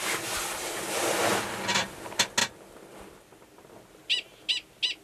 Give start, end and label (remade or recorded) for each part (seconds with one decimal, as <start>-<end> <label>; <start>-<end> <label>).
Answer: 0.0-5.0 recorded